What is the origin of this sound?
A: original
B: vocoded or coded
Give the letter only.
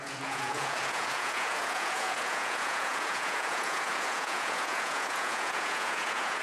B